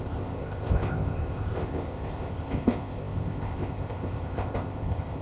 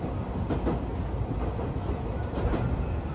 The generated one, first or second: first